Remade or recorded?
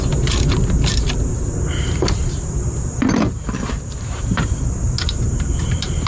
remade